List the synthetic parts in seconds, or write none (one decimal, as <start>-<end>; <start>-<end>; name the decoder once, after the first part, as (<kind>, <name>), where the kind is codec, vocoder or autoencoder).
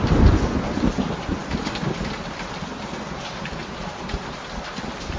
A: none